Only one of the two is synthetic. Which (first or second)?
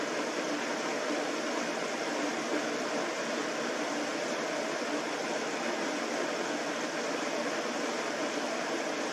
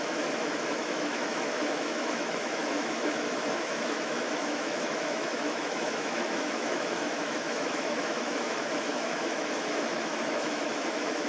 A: second